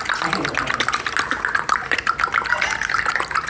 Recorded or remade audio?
recorded